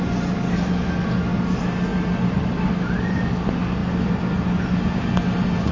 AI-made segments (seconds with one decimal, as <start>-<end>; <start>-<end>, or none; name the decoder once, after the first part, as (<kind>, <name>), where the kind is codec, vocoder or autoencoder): none

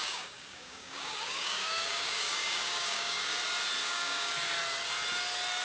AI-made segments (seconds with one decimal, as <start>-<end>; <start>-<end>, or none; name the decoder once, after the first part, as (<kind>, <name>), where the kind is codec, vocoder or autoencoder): 0.0-3.4 (codec, DAC); 3.8-4.3

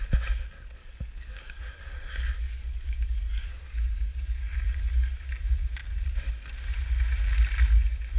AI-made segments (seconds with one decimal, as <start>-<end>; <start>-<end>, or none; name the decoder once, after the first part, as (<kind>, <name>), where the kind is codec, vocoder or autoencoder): 0.8-5.1 (codec, DAC)

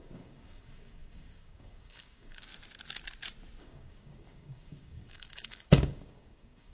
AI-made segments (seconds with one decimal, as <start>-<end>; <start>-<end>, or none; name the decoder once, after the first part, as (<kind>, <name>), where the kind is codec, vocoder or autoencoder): 0.0-2.5 (codec, DAC); 3.6-6.7

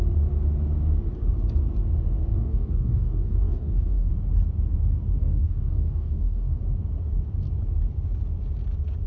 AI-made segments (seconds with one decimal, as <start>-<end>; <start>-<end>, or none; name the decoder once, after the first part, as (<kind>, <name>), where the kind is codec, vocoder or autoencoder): 2.3-4.1 (codec, DAC); 5.2-6.6

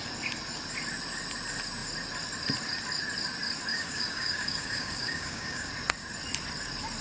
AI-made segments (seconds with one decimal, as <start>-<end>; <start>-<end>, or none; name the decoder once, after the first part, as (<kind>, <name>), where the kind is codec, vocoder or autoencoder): 3.7-5.7 (codec, DAC)

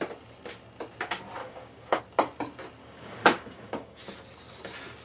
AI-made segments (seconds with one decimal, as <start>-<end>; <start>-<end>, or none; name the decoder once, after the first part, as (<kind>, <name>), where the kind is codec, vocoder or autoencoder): 1.4-2.0 (codec, DAC); 2.8-4.0